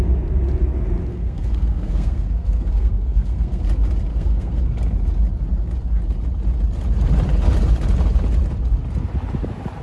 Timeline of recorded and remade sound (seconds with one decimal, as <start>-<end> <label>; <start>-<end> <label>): 0.0-1.1 recorded; 1.1-3.6 remade; 3.6-4.1 recorded; 4.1-4.6 remade; 4.6-9.8 recorded